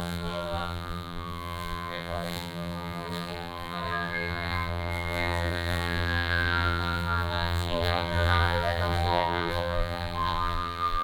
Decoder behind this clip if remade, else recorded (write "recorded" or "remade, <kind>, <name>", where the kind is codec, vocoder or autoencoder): remade, vocoder, BigVGAN v2